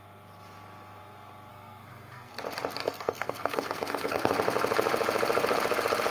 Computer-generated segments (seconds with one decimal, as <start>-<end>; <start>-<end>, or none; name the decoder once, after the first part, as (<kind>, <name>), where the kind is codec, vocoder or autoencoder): 1.5-2.3 (codec, SNAC); 2.8-4.3